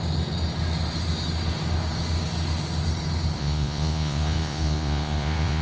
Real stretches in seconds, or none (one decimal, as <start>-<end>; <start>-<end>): 0.0-3.4